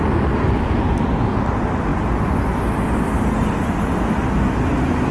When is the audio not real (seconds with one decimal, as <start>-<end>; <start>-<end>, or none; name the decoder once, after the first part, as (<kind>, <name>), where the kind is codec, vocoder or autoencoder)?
none